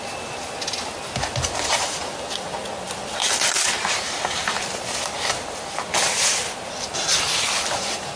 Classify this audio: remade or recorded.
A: recorded